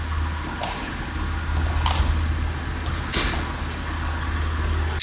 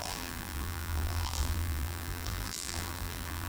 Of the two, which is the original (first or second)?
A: first